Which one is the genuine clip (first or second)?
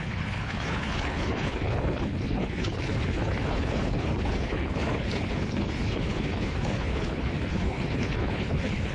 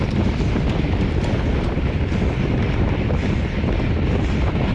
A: second